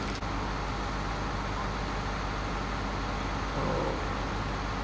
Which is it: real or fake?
real